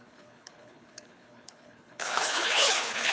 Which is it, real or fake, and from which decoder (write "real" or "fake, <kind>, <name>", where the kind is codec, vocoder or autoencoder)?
fake, codec, HILCodec